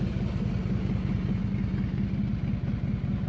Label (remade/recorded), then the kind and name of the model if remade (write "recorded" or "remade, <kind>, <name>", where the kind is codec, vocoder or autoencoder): recorded